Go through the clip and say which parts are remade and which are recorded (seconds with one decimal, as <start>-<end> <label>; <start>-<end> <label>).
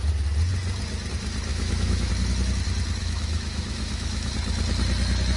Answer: 0.0-1.5 recorded; 1.5-2.1 remade; 2.1-3.0 recorded; 3.0-4.3 remade; 4.3-5.4 recorded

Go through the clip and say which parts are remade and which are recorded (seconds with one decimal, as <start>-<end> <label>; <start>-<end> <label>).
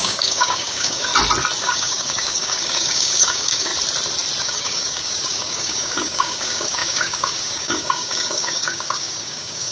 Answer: 0.0-1.1 remade; 1.1-1.6 recorded; 1.6-3.7 remade; 3.7-4.4 recorded; 4.4-9.7 remade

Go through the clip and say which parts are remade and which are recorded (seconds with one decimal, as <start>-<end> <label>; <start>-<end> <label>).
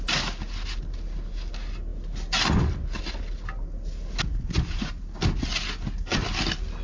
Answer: 0.0-4.3 recorded; 4.3-4.9 remade; 4.9-6.8 recorded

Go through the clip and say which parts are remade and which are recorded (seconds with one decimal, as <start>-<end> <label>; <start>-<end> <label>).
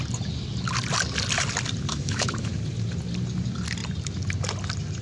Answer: 0.0-1.9 recorded; 1.9-2.5 remade; 2.5-5.0 recorded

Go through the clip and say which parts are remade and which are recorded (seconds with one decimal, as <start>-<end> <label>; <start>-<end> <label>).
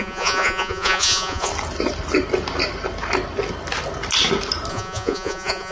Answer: 0.0-1.5 remade; 1.5-4.7 recorded; 4.7-5.7 remade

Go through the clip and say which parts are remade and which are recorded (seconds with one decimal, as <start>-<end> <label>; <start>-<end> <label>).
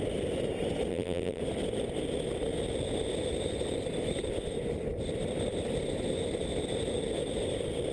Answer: 0.0-0.9 recorded; 0.9-1.4 remade; 1.4-7.9 recorded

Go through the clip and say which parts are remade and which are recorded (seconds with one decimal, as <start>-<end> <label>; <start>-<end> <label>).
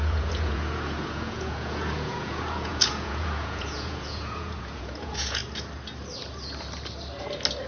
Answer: 0.0-5.4 remade; 5.4-7.7 recorded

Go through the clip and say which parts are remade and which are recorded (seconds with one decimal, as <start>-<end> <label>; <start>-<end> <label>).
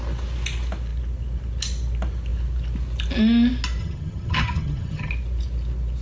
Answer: 0.0-3.8 recorded; 3.8-5.1 remade; 5.1-6.0 recorded